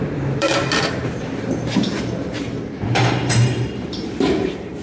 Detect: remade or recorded remade